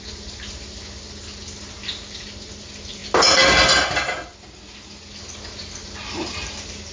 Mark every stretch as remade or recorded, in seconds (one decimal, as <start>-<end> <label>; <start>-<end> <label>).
0.0-6.9 recorded

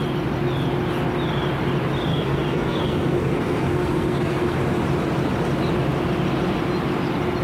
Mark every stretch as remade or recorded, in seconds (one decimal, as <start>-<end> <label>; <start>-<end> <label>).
0.0-2.1 recorded; 2.1-4.6 remade; 4.6-7.4 recorded

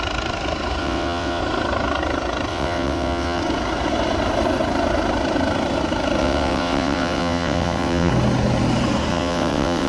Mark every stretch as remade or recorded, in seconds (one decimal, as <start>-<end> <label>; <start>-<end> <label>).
0.0-0.8 recorded; 0.8-1.4 remade; 1.4-2.5 recorded; 2.5-3.4 remade; 3.4-6.2 recorded; 6.2-8.1 remade; 8.1-9.1 recorded; 9.1-9.9 remade